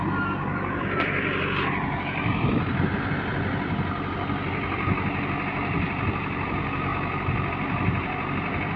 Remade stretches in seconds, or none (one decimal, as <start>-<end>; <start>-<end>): none